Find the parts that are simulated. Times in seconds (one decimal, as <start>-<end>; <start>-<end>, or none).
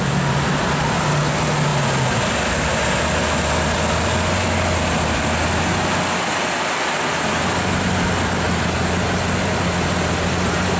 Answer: none